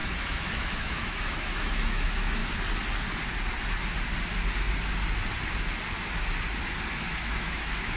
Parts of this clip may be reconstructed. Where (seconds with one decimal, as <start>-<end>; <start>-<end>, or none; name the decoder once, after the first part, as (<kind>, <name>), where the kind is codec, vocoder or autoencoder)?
0.0-2.4 (autoencoder, DAC-VAE); 6.9-8.0